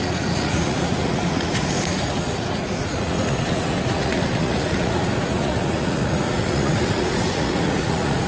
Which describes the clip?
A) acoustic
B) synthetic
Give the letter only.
B